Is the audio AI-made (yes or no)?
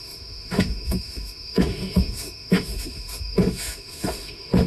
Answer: yes